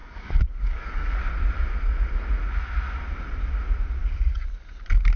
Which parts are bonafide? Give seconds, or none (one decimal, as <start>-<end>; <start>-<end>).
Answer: 1.2-5.2